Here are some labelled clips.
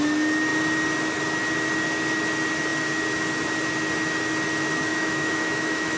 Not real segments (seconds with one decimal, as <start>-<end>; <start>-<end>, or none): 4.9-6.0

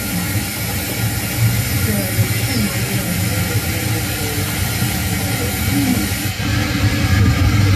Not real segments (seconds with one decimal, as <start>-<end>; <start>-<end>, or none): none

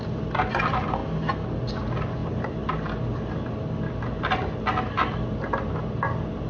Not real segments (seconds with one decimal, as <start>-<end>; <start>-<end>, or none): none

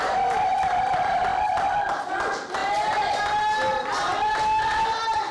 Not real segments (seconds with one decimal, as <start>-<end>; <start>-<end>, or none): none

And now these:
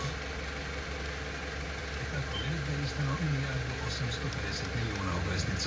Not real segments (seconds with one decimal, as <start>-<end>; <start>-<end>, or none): none

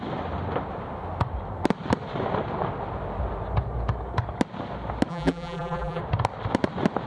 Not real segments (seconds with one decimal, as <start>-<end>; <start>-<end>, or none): 5.1-6.0